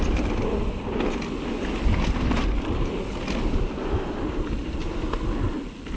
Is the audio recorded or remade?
recorded